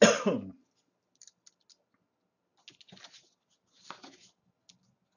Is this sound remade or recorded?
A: recorded